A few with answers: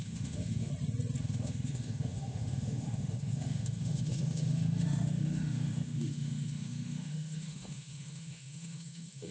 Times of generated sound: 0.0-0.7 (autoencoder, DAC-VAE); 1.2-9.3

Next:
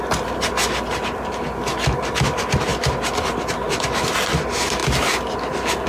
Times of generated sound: none